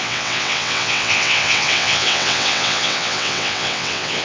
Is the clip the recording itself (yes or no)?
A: no